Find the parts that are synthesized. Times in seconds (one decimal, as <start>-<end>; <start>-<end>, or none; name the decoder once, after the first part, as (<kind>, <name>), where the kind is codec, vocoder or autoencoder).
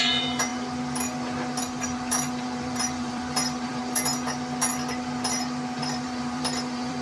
0.0-0.5 (vocoder, BigVGAN v2); 1.6-4.1; 5.8-7.0